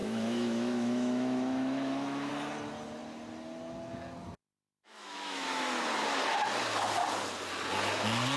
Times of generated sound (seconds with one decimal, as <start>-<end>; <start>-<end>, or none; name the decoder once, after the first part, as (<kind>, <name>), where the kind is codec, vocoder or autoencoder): 0.0-2.3 (autoencoder, DAC-VAE); 4.4-5.8